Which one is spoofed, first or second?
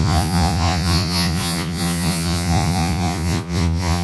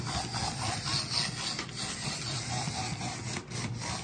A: first